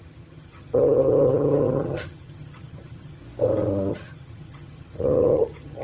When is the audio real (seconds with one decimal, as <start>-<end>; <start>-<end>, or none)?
3.2-3.9